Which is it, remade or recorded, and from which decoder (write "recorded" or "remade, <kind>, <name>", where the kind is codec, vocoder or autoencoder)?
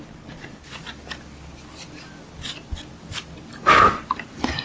recorded